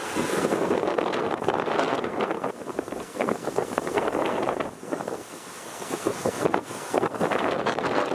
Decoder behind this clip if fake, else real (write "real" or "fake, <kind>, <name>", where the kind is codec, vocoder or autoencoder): fake, codec, SNAC